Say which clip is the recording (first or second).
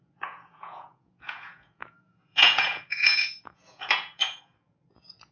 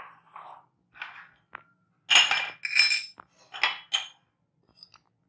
second